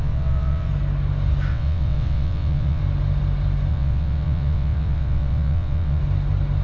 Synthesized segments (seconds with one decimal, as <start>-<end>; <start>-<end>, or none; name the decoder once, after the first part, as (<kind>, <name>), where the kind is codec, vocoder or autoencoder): 0.0-0.7 (vocoder, WaveNeXt); 1.5-2.8; 3.7-6.0